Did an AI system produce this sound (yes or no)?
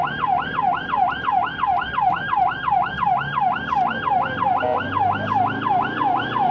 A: no